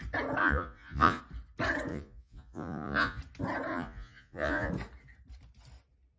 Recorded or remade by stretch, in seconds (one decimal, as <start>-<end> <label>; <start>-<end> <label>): 0.0-0.4 recorded; 0.4-1.2 remade; 1.2-1.9 recorded; 1.9-3.2 remade; 3.2-3.7 recorded; 3.7-4.7 remade; 4.7-6.2 recorded